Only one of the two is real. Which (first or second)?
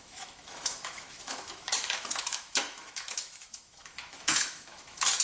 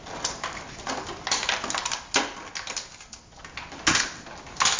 second